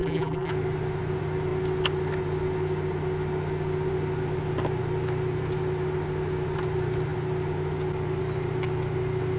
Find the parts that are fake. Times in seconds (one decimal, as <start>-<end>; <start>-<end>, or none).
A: 0.0-0.5